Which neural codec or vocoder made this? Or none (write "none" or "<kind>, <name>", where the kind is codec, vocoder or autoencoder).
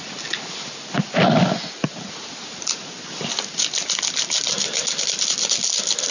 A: none